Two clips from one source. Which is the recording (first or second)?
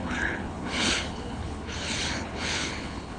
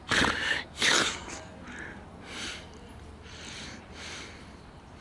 second